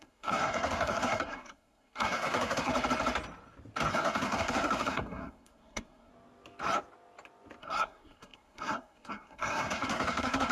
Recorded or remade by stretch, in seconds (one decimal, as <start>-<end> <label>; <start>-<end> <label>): 0.0-2.7 remade; 2.7-3.9 recorded; 3.9-6.1 remade; 6.1-7.6 recorded; 7.6-10.5 remade

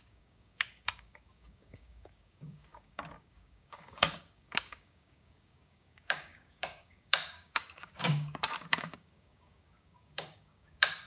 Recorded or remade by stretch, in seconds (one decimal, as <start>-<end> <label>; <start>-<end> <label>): 0.0-11.1 remade

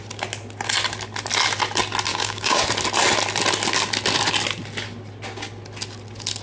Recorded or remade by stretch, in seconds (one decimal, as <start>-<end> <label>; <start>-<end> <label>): 0.0-2.1 recorded; 2.1-2.6 remade; 2.6-6.4 recorded

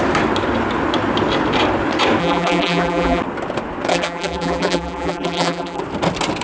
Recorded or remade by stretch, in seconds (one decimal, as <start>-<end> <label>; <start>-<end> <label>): 0.0-2.2 recorded; 2.2-3.2 remade; 3.2-3.9 recorded; 3.9-5.8 remade; 5.8-6.4 recorded